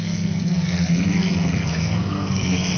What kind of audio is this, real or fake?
fake